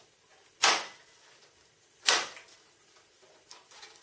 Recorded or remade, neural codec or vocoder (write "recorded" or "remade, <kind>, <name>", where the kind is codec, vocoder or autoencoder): remade, vocoder, BigVGAN v2